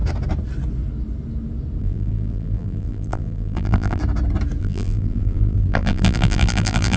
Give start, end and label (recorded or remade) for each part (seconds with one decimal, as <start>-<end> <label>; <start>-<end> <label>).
0.0-1.8 recorded; 1.8-4.0 remade; 4.0-4.6 recorded; 4.6-7.0 remade